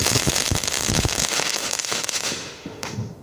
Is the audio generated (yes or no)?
yes